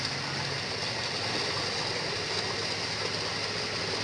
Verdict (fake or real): real